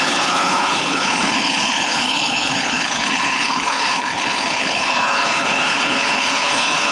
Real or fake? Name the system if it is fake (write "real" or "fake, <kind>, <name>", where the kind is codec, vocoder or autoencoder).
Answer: fake, codec, HILCodec